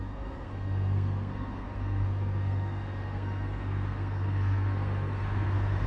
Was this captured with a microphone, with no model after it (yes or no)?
no